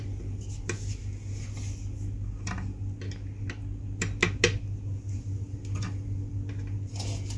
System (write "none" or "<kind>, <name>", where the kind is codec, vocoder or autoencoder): none